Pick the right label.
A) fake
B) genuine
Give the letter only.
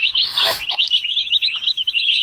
A